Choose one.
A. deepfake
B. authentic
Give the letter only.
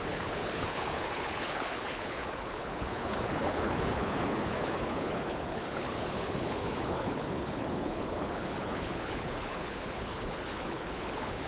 A